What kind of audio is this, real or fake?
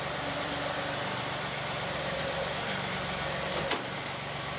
fake